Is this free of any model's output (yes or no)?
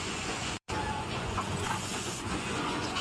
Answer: no